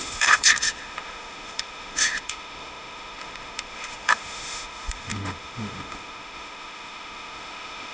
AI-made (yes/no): yes